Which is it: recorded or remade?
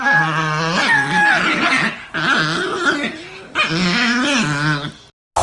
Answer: recorded